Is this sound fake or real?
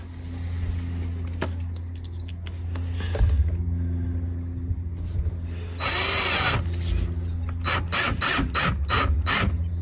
real